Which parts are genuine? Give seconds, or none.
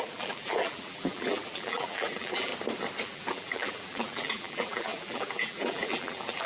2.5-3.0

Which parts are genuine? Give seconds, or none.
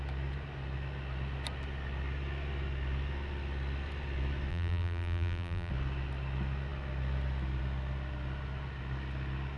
0.0-4.5; 5.7-9.6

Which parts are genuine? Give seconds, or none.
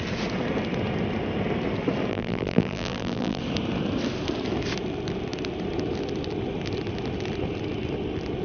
0.0-2.1; 3.4-8.4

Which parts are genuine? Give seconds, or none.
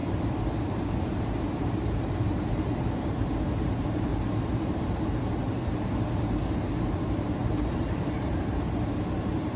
4.1-4.9; 5.4-6.8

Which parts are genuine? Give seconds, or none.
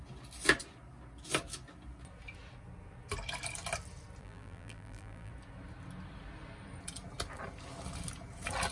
0.0-4.2; 5.3-8.7